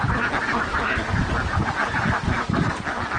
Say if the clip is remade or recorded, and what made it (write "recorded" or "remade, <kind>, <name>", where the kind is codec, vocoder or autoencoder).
recorded